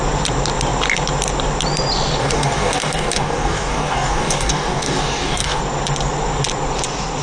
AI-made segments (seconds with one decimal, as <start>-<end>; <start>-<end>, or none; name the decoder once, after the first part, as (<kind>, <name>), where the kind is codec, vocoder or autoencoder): 2.2-5.6 (codec, DAC)